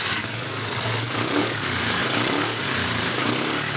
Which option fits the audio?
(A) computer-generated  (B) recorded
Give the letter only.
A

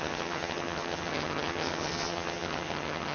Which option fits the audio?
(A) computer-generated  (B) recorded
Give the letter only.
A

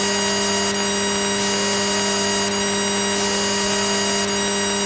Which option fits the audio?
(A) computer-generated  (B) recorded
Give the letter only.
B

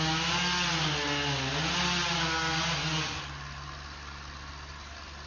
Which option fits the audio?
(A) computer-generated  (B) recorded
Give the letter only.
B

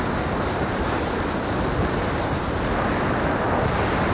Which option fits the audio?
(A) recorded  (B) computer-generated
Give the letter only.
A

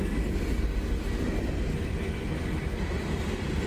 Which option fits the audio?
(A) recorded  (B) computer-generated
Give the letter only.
A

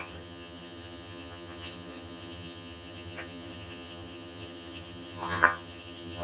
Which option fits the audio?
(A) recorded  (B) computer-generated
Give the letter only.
B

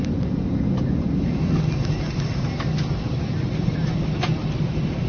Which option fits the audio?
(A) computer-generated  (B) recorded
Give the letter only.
B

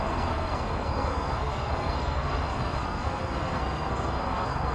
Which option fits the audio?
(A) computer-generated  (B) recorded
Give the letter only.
A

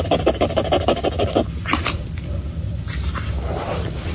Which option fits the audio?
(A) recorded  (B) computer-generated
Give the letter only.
A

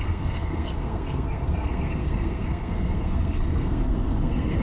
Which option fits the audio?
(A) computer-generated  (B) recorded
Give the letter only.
A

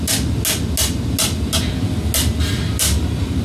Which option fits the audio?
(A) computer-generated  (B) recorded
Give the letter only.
B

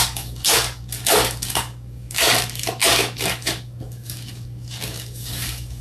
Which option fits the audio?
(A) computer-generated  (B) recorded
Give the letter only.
A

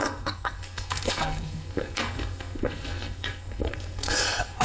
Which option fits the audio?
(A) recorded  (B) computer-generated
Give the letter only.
B